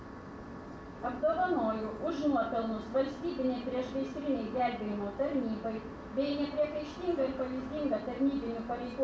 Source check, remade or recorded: recorded